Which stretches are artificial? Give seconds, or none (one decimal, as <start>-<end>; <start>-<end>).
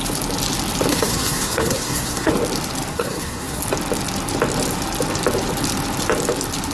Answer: 0.9-2.3; 2.9-3.6